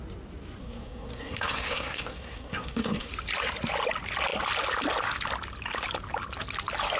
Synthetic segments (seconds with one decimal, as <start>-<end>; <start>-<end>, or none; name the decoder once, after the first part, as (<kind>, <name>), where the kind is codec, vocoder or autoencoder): 0.6-3.1 (codec, SNAC)